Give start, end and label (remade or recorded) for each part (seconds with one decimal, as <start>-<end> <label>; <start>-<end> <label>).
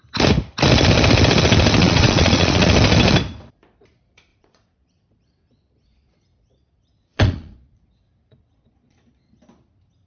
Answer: 0.0-1.8 recorded; 1.8-2.7 remade; 2.7-4.3 recorded; 4.3-9.3 remade; 9.3-10.1 recorded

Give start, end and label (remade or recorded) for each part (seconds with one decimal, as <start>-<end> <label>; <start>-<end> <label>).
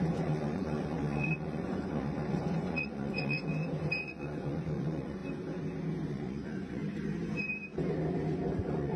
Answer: 0.0-3.5 remade; 3.5-4.0 recorded; 4.0-5.2 remade; 5.2-6.1 recorded; 6.1-6.8 remade; 6.8-8.6 recorded; 8.6-9.0 remade